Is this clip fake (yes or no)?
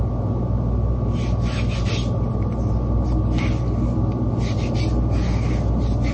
no